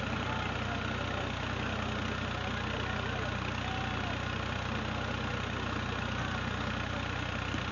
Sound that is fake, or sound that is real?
real